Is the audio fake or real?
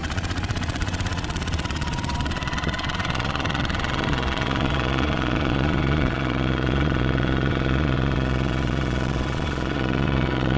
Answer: fake